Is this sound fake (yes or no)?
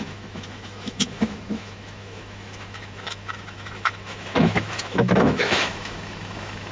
yes